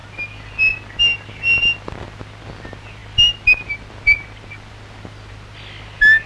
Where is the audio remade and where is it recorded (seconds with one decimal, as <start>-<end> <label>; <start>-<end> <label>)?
0.0-6.3 recorded

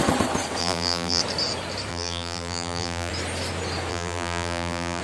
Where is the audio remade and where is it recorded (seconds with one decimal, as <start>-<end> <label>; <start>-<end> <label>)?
0.0-0.6 recorded; 0.6-1.2 remade; 1.2-1.9 recorded; 1.9-3.1 remade; 3.1-3.9 recorded; 3.9-5.0 remade

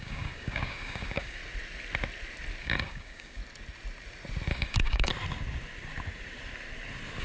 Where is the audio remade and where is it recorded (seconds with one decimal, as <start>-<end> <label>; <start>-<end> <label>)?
0.0-1.4 remade; 1.4-2.6 recorded; 2.6-3.4 remade; 3.4-4.5 recorded; 4.5-5.1 remade; 5.1-7.2 recorded

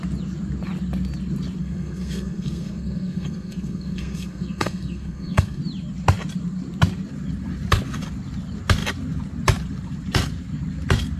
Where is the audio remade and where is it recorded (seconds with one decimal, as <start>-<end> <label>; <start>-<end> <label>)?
0.0-1.6 recorded; 1.6-5.6 remade; 5.6-11.2 recorded

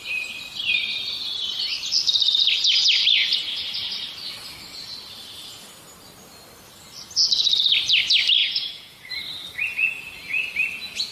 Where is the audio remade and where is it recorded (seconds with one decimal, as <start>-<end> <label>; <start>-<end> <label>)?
0.0-8.4 recorded; 8.4-9.1 remade; 9.1-11.1 recorded